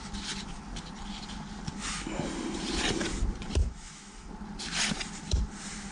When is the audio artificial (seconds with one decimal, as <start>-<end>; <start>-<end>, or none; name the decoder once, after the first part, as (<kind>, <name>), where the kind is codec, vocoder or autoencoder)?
3.6-4.3 (autoencoder, DAC-VAE)